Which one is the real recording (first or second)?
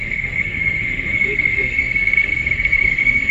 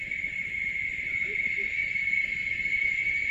second